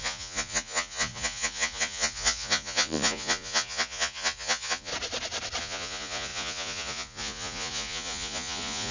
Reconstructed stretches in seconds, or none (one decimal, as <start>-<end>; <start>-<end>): 0.0-4.9; 5.6-8.9